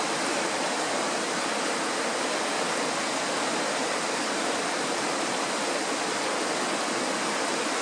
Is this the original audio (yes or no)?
yes